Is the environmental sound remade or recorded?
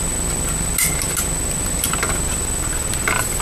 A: recorded